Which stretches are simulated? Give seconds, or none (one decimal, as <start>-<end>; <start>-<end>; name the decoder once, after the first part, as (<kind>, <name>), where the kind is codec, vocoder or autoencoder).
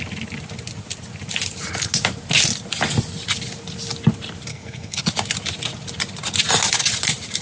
4.5-5.0 (codec, SNAC)